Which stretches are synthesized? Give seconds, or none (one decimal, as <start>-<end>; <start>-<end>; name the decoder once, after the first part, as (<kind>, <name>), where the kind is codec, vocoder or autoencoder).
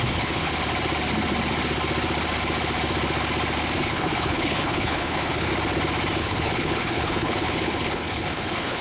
0.0-0.5 (codec, HILCodec); 3.8-5.5; 6.2-8.8